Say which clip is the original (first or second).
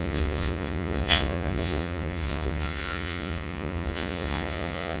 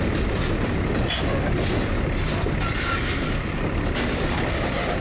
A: second